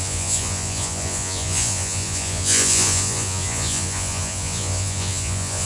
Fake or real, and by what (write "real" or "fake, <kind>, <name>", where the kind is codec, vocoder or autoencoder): fake, vocoder, Vocos